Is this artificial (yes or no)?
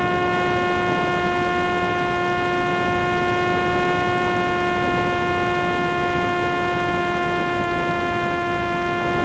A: no